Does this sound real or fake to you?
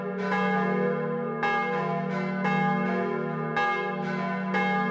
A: real